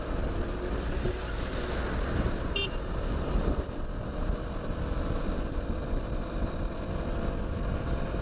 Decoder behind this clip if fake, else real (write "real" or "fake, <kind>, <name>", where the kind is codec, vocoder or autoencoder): fake, vocoder, BigVGAN v2